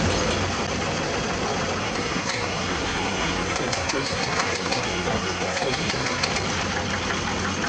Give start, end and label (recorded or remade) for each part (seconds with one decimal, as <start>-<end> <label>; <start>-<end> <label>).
0.0-1.8 recorded; 1.8-6.3 remade; 6.3-7.7 recorded